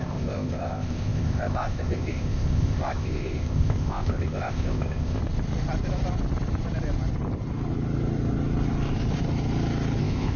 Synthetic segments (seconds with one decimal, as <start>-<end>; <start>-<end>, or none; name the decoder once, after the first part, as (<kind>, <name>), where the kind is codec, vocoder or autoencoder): 0.0-5.2 (codec, ZipCodec); 10.0-10.4